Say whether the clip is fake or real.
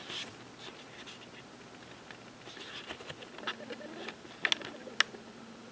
real